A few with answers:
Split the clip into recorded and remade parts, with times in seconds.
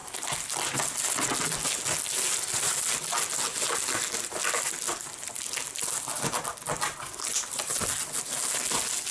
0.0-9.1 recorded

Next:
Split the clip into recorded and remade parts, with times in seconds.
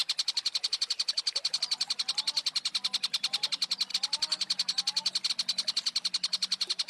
0.0-6.9 recorded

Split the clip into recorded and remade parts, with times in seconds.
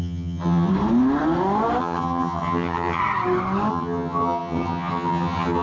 0.0-0.7 remade; 0.7-1.8 recorded; 1.8-3.0 remade; 3.0-3.7 recorded; 3.7-5.6 remade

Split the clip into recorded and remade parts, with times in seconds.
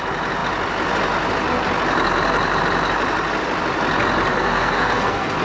0.0-4.3 recorded; 4.3-5.4 remade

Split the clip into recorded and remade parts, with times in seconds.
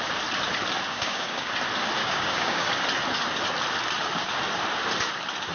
0.0-0.9 recorded; 0.9-1.5 remade; 1.5-2.0 recorded; 2.0-2.7 remade; 2.7-5.5 recorded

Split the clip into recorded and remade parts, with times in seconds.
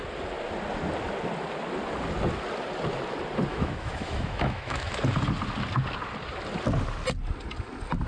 0.0-3.5 recorded; 3.5-4.9 remade; 4.9-8.1 recorded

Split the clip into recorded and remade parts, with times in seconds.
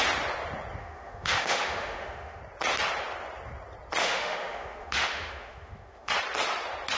0.0-0.8 recorded; 0.8-2.4 remade; 2.4-4.0 recorded; 4.0-6.1 remade; 6.1-7.0 recorded